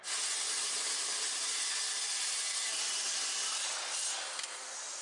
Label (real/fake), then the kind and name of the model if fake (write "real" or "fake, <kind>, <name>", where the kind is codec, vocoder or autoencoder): real